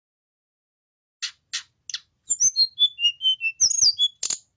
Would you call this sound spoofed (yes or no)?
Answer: no